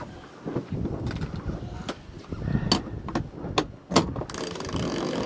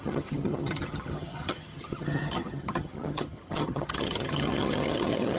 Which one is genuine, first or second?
first